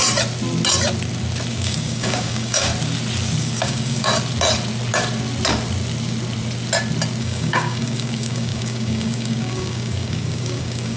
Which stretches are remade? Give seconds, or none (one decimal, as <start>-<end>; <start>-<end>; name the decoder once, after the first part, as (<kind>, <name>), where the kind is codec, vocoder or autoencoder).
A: 1.5-2.7 (codec, DAC); 3.4-4.1; 7.2-11.0